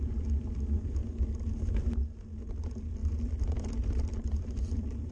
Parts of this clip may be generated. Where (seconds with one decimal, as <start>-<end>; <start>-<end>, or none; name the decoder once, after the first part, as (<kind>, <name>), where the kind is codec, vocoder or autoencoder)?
0.0-1.0 (vocoder, BigVGAN v2); 2.6-5.1